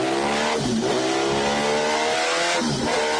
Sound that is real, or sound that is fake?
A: real